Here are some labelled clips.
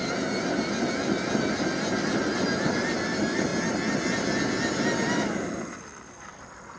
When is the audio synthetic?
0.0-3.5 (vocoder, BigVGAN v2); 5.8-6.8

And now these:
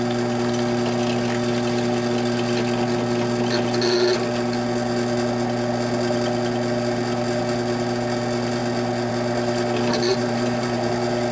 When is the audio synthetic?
10.1-10.9 (vocoder, BigVGAN v2)

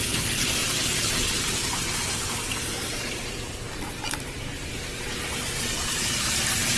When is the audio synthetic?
0.6-4.7 (vocoder, BigVGAN v2); 5.4-6.8

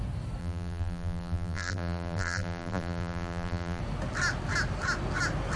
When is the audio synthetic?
0.4-3.8 (vocoder, BigVGAN v2)